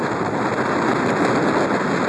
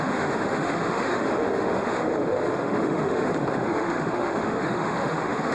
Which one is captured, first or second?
first